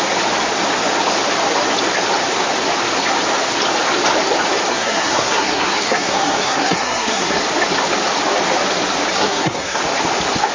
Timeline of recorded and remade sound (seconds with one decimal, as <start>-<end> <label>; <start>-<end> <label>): 0.0-4.7 recorded; 4.7-7.4 remade; 7.4-9.1 recorded; 9.1-9.8 remade; 9.8-10.5 recorded